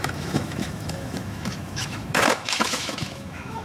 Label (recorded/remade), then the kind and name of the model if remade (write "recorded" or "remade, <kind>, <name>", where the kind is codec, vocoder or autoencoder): remade, autoencoder, DAC-VAE